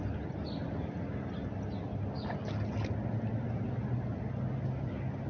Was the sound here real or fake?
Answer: real